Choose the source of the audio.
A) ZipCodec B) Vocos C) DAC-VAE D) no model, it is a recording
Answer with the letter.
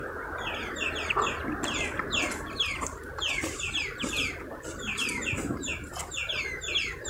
D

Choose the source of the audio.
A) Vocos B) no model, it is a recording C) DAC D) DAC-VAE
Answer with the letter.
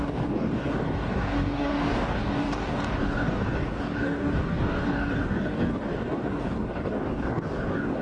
C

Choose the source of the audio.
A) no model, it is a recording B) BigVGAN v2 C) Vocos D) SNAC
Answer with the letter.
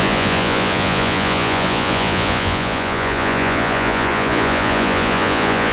C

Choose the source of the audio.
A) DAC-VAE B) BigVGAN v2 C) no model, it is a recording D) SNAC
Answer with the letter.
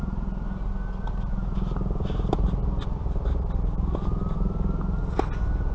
C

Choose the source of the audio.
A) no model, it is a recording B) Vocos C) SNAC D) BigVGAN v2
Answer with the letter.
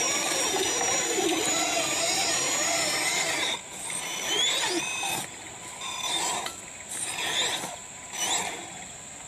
A